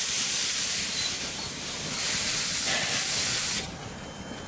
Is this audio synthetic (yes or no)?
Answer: no